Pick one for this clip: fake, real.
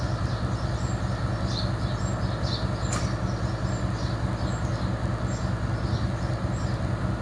real